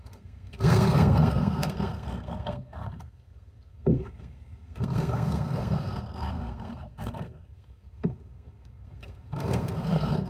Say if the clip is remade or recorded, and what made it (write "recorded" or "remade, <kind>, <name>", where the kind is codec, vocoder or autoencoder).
remade, codec, SNAC